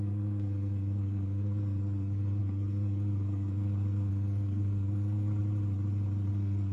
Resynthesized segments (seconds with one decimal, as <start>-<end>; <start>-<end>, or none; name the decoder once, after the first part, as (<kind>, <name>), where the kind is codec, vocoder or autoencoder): 0.0-5.4 (codec, SNAC); 6.3-6.7